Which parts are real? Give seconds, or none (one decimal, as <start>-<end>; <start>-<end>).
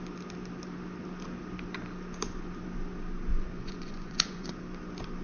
0.0-3.3; 4.5-5.2